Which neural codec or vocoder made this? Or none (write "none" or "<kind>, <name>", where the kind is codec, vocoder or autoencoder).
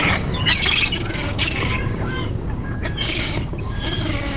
codec, DAC